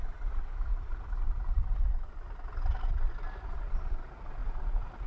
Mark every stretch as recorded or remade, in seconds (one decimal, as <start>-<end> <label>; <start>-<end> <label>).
0.0-5.1 recorded